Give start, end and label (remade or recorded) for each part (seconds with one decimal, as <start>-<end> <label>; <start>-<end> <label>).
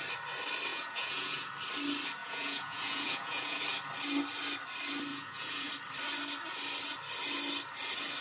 0.0-0.7 recorded; 0.7-1.5 remade; 1.5-2.2 recorded; 2.2-3.6 remade; 3.6-5.1 recorded; 5.1-5.7 remade; 5.7-8.2 recorded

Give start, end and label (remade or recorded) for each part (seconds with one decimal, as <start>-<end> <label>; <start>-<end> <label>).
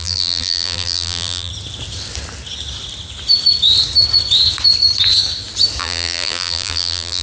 0.0-1.5 remade; 1.5-5.8 recorded; 5.8-7.2 remade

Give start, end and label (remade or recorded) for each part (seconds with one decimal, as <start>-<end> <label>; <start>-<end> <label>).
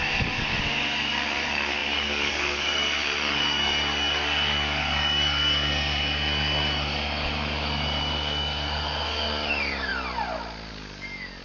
0.0-9.9 remade; 9.9-10.7 recorded; 10.7-11.4 remade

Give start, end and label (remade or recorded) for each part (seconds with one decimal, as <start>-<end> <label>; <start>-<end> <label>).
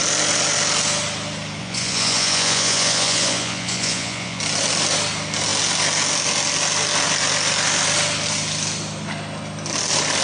0.0-1.6 recorded; 1.6-4.4 remade; 4.4-10.2 recorded